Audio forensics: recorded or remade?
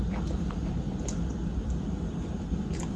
recorded